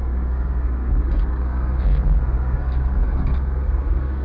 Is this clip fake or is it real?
fake